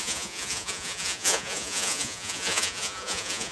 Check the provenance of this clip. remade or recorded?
remade